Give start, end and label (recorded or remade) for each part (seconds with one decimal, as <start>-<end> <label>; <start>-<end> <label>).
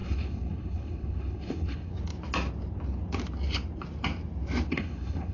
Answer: 0.0-1.9 remade; 1.9-4.7 recorded; 4.7-5.3 remade